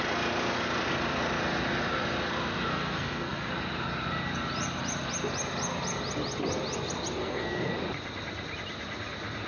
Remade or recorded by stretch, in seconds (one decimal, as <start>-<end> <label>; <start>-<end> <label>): 0.0-2.7 recorded; 2.7-3.5 remade; 3.5-7.2 recorded; 7.2-7.7 remade; 7.7-9.5 recorded